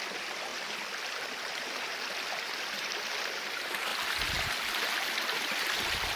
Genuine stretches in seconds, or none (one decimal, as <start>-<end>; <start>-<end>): 0.0-0.5; 3.2-6.2